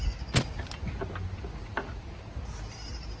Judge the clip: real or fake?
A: real